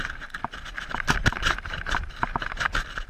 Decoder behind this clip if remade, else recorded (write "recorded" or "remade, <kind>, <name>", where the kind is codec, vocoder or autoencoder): remade, vocoder, BigVGAN v2